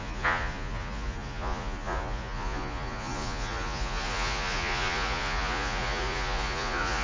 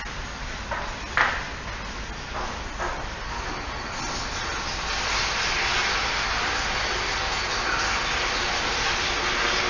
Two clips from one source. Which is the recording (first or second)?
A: second